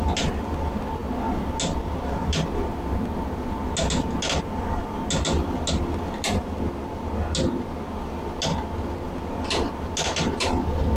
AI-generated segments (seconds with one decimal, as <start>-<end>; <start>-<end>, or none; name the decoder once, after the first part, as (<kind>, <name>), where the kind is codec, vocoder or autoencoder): none